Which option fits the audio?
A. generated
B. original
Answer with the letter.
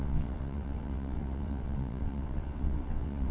A